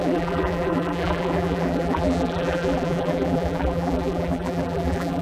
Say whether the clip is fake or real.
fake